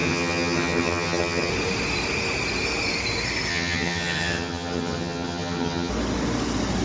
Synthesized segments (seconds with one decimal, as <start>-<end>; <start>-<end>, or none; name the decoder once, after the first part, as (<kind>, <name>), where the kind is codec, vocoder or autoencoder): 0.0-1.5 (vocoder, HiFi-GAN); 3.5-5.9